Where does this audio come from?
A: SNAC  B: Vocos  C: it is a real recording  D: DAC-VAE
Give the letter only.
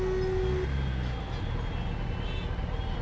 C